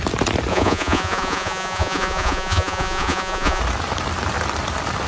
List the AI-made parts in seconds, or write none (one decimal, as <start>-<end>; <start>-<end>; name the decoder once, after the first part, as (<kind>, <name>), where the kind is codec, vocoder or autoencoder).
0.5-3.6 (vocoder, Vocos)